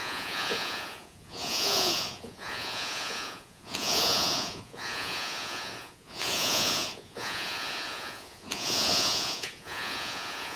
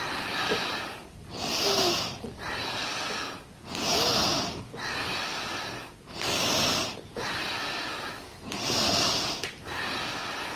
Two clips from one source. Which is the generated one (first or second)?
first